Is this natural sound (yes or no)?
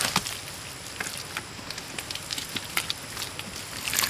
yes